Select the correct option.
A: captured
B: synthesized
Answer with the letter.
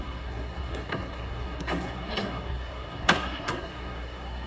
B